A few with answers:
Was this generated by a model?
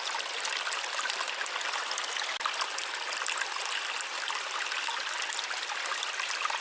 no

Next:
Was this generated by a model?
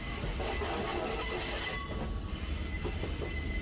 no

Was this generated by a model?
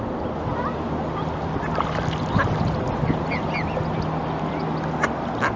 no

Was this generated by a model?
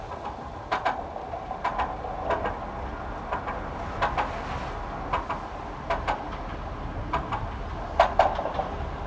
no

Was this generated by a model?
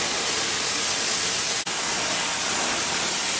no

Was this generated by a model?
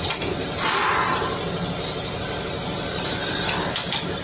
no